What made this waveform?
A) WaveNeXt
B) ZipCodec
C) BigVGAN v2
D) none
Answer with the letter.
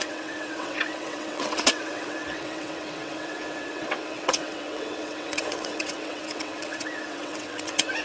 A